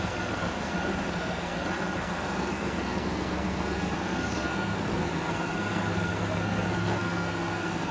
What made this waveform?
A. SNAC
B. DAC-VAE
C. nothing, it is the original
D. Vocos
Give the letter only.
A